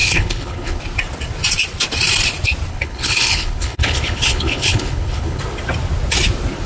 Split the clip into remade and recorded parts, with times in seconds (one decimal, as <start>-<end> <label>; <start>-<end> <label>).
0.0-0.8 remade; 0.8-2.7 recorded; 2.7-5.4 remade; 5.4-6.7 recorded